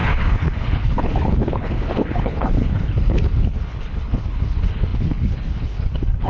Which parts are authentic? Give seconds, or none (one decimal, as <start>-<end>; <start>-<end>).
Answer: none